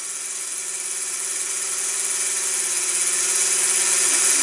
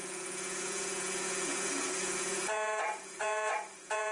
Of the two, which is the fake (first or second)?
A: second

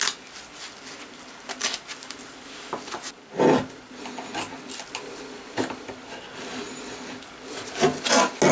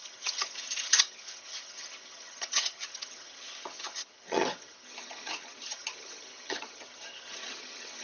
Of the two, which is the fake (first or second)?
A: second